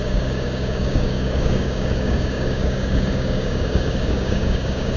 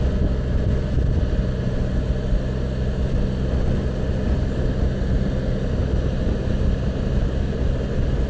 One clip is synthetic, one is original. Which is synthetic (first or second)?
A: first